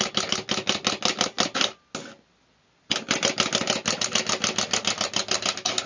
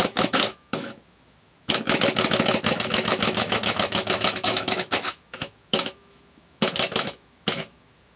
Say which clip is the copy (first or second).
second